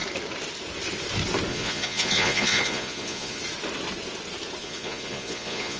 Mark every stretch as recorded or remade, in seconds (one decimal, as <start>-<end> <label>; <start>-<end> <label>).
0.0-1.5 recorded; 1.5-3.4 remade; 3.4-4.6 recorded; 4.6-5.8 remade